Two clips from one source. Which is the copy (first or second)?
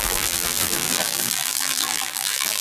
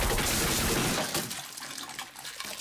first